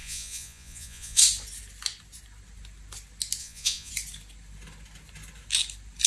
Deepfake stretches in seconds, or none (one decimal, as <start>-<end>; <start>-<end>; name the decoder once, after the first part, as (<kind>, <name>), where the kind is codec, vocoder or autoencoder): 0.0-1.2 (vocoder, Vocos); 3.4-3.9